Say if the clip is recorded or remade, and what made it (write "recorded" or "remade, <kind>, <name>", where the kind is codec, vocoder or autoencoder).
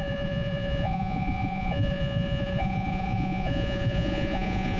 remade, vocoder, Vocos